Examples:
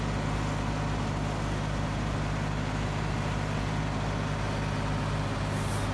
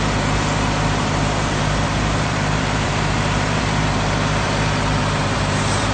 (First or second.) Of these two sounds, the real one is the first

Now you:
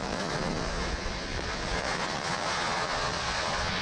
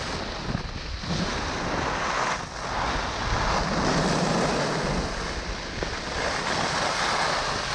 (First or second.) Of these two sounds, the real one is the second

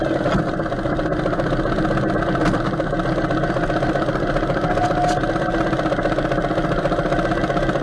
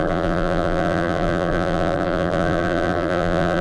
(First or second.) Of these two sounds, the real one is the first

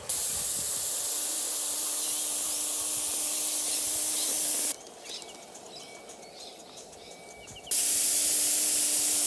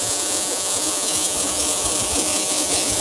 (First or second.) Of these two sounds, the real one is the first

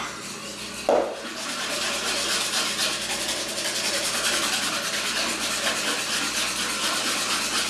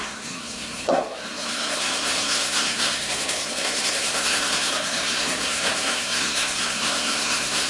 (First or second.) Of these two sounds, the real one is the first